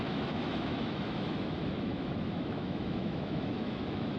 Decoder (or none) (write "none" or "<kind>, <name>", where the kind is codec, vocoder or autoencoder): autoencoder, DAC-VAE